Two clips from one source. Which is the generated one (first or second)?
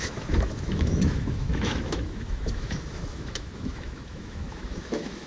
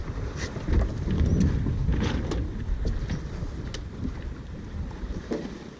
first